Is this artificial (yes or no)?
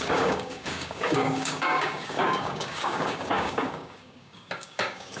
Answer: yes